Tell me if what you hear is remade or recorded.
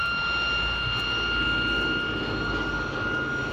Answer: recorded